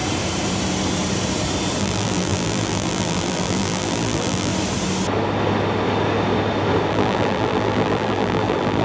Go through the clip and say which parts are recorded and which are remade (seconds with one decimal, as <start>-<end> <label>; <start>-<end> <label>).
0.0-1.8 recorded; 1.8-4.5 remade; 4.5-6.9 recorded; 6.9-8.8 remade